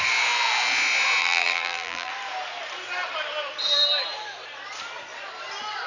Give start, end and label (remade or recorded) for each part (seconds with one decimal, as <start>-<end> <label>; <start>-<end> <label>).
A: 0.0-1.2 recorded; 1.2-2.1 remade; 2.1-5.9 recorded